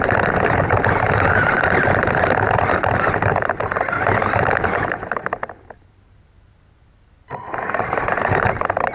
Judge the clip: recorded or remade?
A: recorded